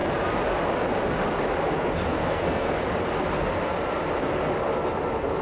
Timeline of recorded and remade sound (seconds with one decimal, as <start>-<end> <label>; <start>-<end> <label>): 0.0-2.1 recorded; 2.1-2.7 remade; 2.7-5.4 recorded